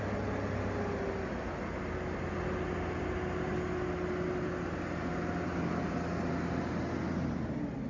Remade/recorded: recorded